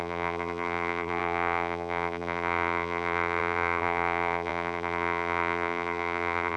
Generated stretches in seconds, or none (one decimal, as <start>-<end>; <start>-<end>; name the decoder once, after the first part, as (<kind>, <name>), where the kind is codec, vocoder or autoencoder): 0.0-6.6 (vocoder, BigVGAN v2)